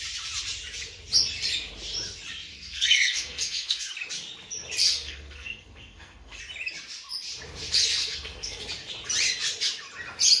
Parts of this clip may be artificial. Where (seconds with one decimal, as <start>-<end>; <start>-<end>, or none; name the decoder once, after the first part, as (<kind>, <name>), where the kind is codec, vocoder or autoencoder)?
2.5-3.9 (codec, SNAC); 4.8-6.4; 8.0-8.6